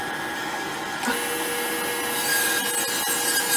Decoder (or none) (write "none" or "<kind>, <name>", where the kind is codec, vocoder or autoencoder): none